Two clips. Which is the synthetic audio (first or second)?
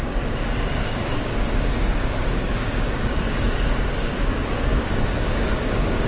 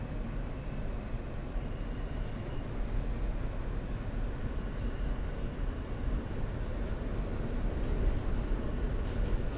first